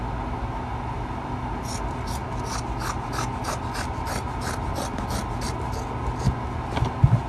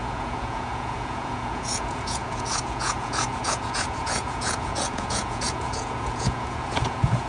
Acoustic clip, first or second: first